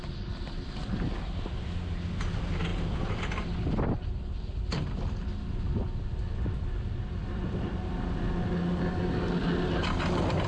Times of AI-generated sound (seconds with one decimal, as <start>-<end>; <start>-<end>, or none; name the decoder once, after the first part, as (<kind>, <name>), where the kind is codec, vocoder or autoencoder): 7.2-7.8 (vocoder, BigVGAN v2)